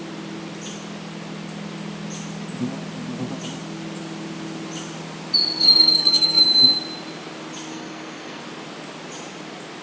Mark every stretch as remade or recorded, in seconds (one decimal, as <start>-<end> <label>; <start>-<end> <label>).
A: 0.0-5.6 recorded; 5.6-6.4 remade; 6.4-7.7 recorded; 7.7-8.4 remade; 8.4-9.8 recorded

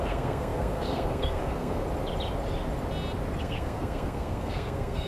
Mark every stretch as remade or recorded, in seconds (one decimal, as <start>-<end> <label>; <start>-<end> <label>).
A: 0.0-1.8 remade; 1.8-3.4 recorded; 3.4-5.1 remade

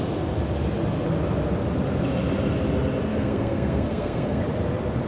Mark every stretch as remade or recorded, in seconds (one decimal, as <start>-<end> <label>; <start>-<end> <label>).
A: 0.0-3.1 recorded; 3.1-4.4 remade; 4.4-5.1 recorded

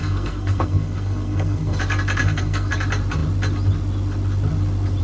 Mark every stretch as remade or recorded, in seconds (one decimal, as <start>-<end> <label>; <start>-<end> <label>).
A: 0.0-1.8 remade; 1.8-2.2 recorded; 2.2-2.7 remade; 2.7-5.0 recorded

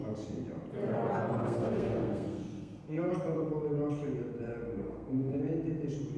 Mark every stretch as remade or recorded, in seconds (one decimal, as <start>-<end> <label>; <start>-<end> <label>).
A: 0.0-1.4 recorded; 1.4-3.1 remade; 3.1-4.8 recorded; 4.8-5.4 remade; 5.4-6.2 recorded

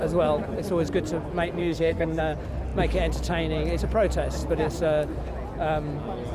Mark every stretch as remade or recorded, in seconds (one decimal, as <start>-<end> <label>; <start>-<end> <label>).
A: 0.0-1.6 recorded; 1.6-2.2 remade; 2.2-6.3 recorded

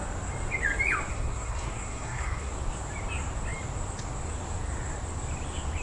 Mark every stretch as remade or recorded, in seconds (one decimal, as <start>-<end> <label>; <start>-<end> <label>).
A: 0.0-1.1 recorded; 1.1-2.5 remade; 2.5-5.8 recorded

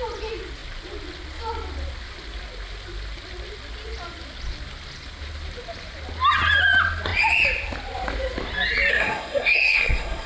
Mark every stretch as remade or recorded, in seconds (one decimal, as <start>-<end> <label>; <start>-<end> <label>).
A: 0.0-8.9 recorded; 8.9-10.3 remade